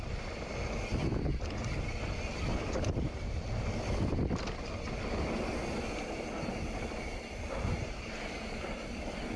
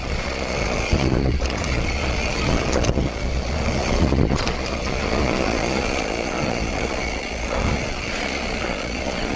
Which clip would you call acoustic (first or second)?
first